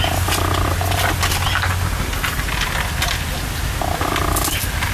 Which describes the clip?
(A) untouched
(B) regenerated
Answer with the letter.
A